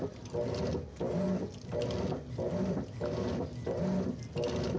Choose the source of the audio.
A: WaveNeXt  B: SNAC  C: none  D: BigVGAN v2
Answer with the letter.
C